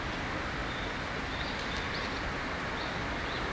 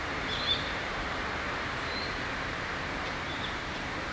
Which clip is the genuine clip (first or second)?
first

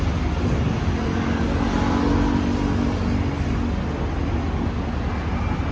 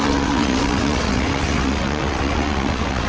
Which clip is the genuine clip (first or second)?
first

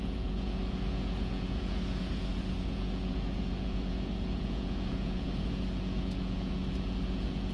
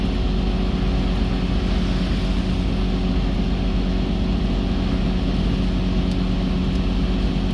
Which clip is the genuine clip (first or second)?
second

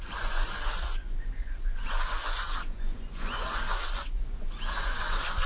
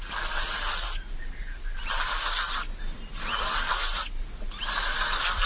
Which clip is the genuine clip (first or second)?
second